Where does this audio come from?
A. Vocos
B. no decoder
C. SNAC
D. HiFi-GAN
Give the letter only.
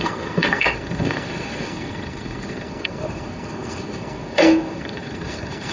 C